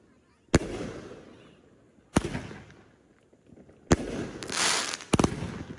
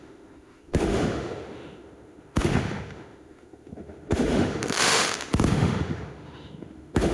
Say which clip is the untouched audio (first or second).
first